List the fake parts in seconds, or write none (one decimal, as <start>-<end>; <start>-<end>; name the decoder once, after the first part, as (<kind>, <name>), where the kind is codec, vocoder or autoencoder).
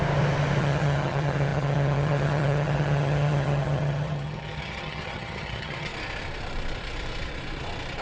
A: 0.6-5.9 (vocoder, HiFi-GAN)